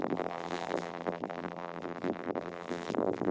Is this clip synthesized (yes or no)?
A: yes